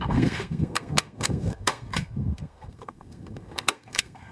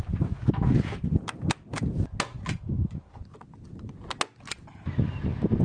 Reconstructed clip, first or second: first